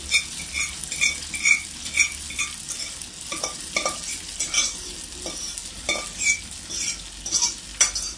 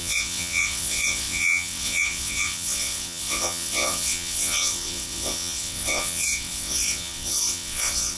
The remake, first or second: second